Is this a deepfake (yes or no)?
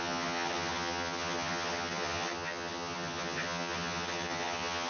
yes